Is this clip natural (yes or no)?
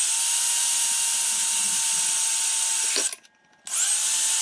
yes